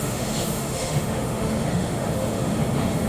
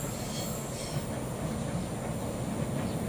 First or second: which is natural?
second